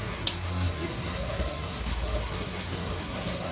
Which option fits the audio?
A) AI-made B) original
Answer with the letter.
A